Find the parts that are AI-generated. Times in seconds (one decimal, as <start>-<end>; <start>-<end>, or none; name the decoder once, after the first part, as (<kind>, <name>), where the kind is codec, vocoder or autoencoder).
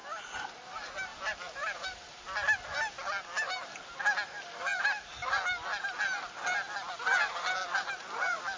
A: 0.0-0.7 (vocoder, BigVGAN v2); 1.1-2.1